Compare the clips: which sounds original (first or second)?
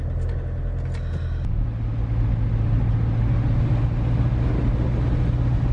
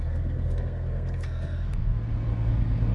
first